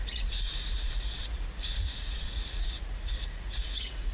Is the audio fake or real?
fake